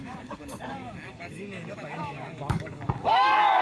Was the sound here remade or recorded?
remade